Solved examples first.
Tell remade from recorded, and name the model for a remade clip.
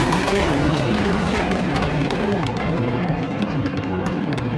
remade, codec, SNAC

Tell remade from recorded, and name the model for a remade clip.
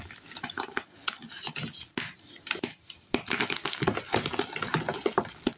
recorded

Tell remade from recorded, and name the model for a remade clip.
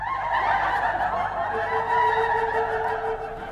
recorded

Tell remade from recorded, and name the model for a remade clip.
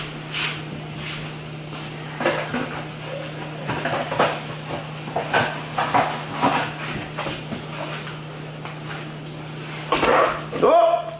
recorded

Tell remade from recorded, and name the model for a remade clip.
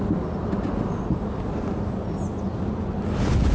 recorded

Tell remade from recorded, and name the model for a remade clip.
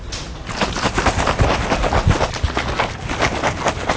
recorded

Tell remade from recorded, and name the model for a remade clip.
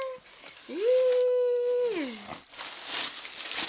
recorded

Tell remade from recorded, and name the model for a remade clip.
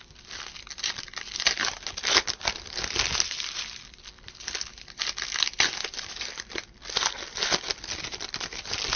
remade, vocoder, BigVGAN v2